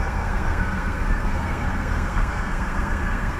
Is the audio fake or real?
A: fake